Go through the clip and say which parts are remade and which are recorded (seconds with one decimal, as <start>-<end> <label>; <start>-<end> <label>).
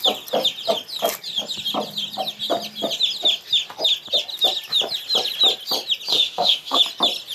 0.0-6.1 recorded; 6.1-6.8 remade; 6.8-7.3 recorded